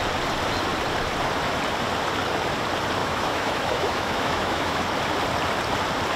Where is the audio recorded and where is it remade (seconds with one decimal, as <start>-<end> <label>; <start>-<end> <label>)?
0.0-3.0 recorded; 3.0-4.8 remade; 4.8-6.2 recorded